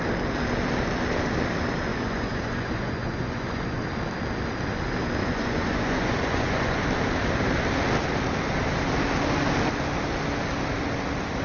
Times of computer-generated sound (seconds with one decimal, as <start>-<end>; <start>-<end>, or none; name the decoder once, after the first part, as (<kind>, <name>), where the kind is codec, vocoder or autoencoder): 1.9-3.8 (vocoder, Vocos); 5.2-6.8